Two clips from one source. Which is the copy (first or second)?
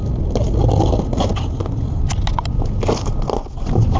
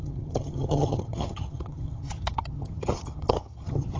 second